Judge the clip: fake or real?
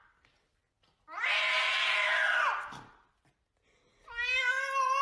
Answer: real